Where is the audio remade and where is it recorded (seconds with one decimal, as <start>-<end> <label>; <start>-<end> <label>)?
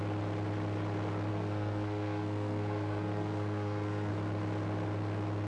0.0-1.3 recorded; 1.3-4.1 remade; 4.1-5.5 recorded